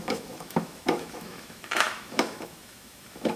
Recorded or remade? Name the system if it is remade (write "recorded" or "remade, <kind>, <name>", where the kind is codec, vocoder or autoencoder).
remade, autoencoder, DAC-VAE